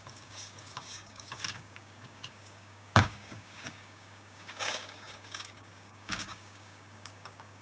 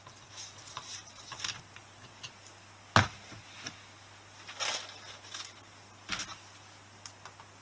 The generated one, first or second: first